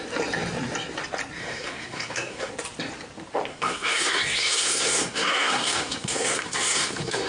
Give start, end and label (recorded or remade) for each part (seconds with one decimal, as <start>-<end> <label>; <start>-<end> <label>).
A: 0.0-1.4 recorded; 1.4-2.5 remade; 2.5-3.5 recorded; 3.5-7.3 remade